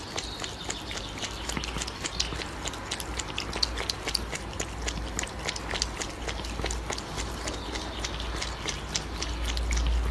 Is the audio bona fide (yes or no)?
yes